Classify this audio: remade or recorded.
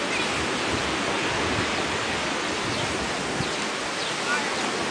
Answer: recorded